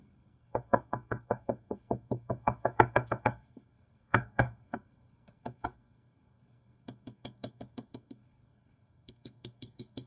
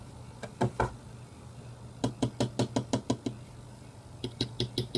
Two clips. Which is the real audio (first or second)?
second